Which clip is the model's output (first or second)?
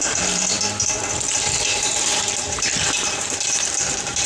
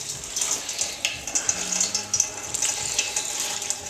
first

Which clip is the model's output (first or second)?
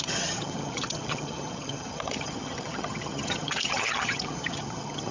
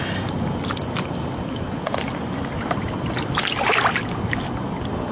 first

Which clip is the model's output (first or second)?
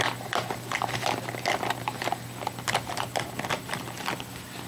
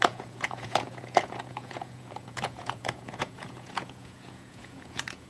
second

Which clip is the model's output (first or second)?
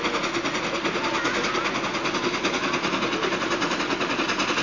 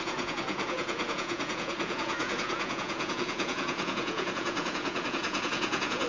second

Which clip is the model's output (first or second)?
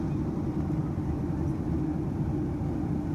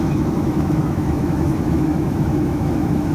second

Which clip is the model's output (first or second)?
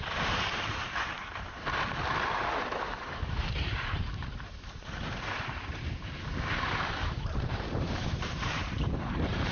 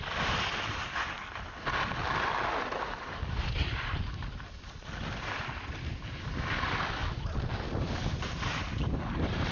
first